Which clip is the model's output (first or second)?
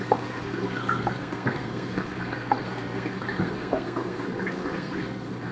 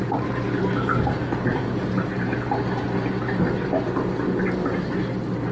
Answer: first